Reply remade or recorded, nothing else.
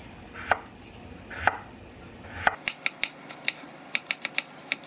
recorded